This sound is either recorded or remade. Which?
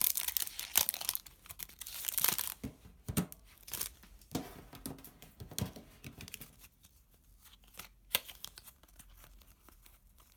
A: recorded